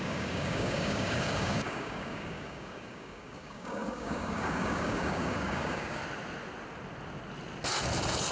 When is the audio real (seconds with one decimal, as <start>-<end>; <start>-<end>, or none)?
6.0-8.3